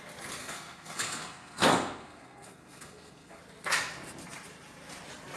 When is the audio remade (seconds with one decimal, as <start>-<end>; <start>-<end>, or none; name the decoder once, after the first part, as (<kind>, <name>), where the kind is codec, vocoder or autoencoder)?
0.4-3.4 (codec, SNAC)